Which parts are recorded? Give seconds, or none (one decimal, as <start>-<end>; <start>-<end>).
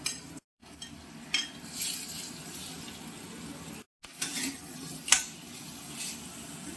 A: 0.0-6.8